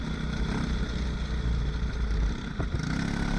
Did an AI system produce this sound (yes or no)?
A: no